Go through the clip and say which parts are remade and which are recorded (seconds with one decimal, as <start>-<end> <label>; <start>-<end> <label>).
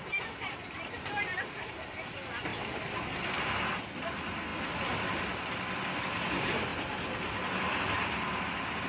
0.0-8.9 recorded